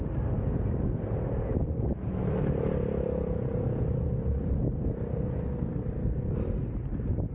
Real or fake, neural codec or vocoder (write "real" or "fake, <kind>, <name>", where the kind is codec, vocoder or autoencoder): real